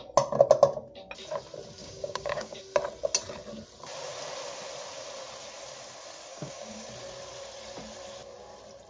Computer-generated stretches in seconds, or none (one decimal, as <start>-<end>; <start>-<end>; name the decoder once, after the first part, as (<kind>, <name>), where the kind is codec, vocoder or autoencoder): 1.8-2.6 (codec, DAC); 6.3-6.9